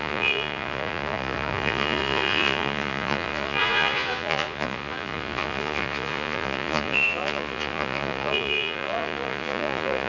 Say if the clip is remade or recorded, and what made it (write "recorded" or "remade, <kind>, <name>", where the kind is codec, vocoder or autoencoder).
remade, vocoder, Vocos